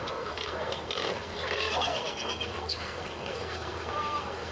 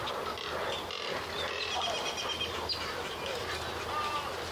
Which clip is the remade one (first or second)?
first